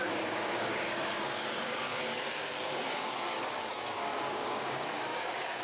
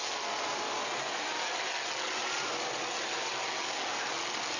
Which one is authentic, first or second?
second